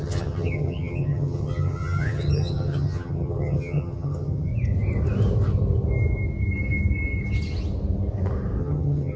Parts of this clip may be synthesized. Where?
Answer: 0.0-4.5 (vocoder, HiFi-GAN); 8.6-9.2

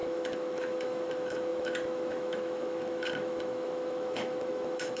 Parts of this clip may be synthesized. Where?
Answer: 0.0-5.0 (autoencoder, DAC-VAE)